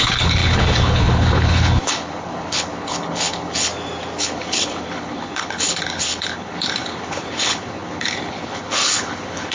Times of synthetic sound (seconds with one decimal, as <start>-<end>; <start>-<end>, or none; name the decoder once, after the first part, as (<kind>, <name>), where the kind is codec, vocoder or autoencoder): 0.0-3.7 (codec, HILCodec); 4.2-9.5